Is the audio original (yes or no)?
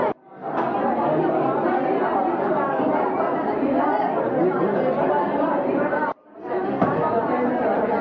yes